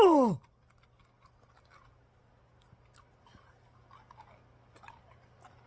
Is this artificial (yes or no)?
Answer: no